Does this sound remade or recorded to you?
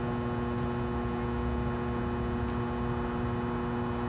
recorded